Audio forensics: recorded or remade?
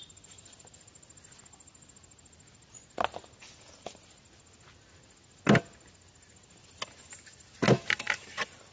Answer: recorded